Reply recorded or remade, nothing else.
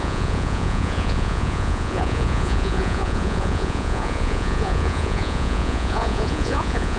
remade